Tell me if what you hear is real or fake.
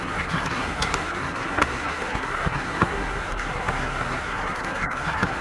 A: fake